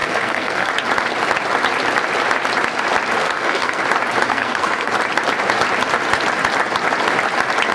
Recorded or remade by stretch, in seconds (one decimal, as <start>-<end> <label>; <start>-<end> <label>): 0.0-0.7 remade; 0.7-3.2 recorded; 3.2-3.8 remade; 3.8-4.3 recorded; 4.3-4.9 remade; 4.9-7.7 recorded